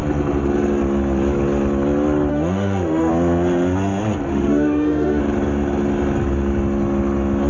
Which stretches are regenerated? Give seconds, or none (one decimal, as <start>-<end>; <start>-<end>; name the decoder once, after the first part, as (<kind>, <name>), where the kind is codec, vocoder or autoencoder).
2.3-3.1 (autoencoder, DAC-VAE); 4.3-5.2